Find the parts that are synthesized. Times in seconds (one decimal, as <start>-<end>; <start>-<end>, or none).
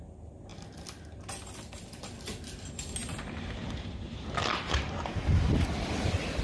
0.5-2.0; 3.0-4.9